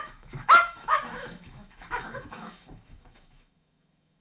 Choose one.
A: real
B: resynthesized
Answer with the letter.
B